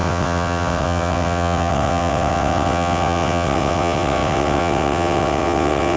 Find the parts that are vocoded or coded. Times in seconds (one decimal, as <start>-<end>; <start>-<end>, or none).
0.0-6.0